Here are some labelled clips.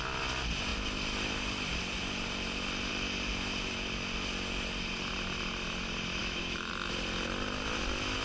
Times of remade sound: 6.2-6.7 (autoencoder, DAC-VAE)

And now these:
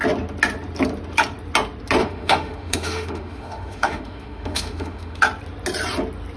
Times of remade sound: 2.0-5.2 (autoencoder, DAC-VAE)

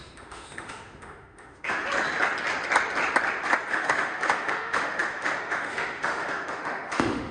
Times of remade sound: 0.0-1.8 (autoencoder, DAC-VAE); 3.7-7.3

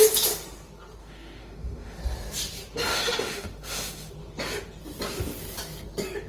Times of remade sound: 1.0-2.0 (autoencoder, DAC-VAE); 2.9-4.1

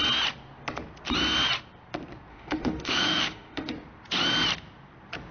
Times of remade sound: 2.3-3.7 (autoencoder, DAC-VAE)

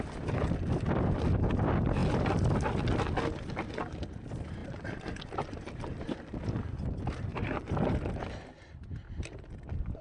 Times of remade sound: none

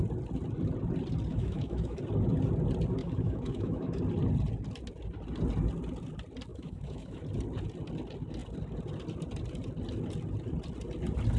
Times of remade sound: 1.3-2.0 (autoencoder, DAC-VAE); 3.0-4.0; 6.5-7.2

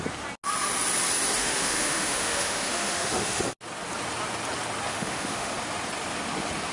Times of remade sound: 1.4-3.4 (autoencoder, DAC-VAE); 4.9-5.5